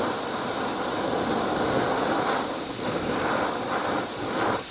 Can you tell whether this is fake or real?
fake